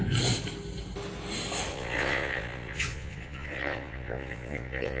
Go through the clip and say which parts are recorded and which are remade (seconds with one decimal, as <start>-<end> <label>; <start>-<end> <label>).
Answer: 0.0-1.7 recorded; 1.7-5.0 remade